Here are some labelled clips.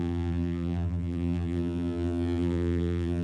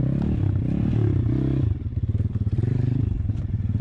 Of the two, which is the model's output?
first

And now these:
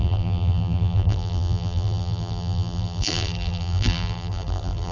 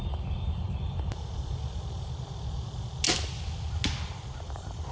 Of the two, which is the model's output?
first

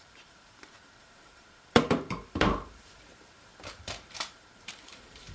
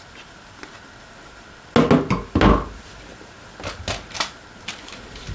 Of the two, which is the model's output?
first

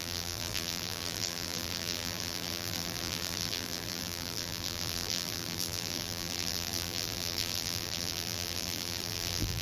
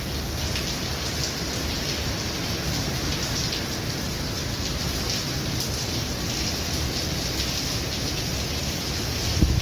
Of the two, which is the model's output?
first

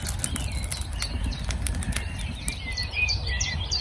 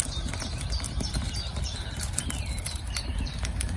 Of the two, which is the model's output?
second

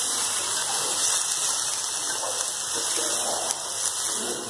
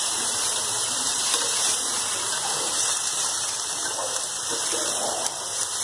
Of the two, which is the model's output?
second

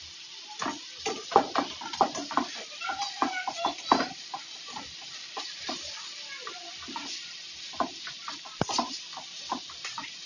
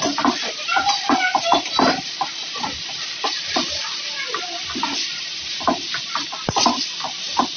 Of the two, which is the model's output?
second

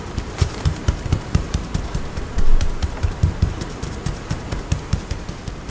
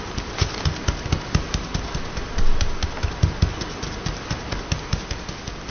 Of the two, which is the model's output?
first